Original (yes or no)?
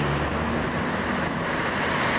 yes